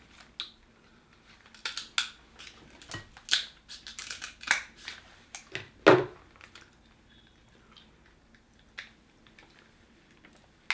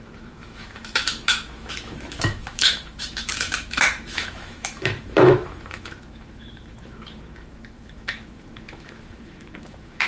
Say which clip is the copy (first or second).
second